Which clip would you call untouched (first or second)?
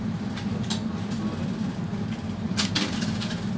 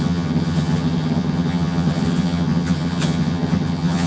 first